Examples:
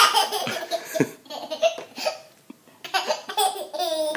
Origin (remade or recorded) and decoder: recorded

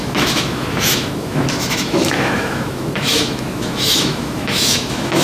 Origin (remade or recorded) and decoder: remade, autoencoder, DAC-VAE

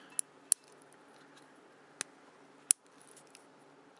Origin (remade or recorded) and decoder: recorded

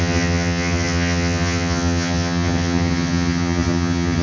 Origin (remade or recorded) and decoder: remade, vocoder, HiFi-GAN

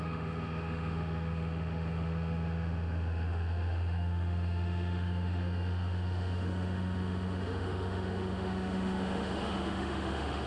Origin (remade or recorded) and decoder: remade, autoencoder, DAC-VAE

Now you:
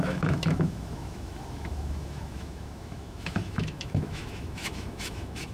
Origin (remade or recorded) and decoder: remade, autoencoder, DAC-VAE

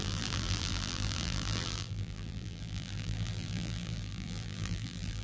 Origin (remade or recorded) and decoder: remade, vocoder, BigVGAN v2